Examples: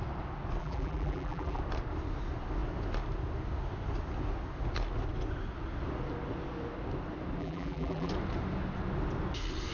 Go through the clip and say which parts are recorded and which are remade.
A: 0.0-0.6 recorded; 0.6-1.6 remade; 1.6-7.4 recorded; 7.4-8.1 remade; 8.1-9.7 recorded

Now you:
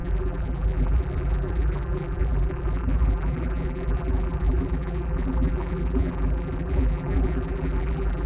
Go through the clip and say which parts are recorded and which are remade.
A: 0.0-8.3 remade

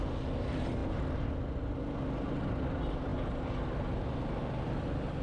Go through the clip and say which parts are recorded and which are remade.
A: 0.0-5.2 recorded

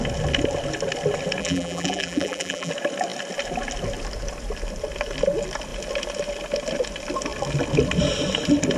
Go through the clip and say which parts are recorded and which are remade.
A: 0.0-1.4 recorded; 1.4-2.7 remade; 2.7-8.8 recorded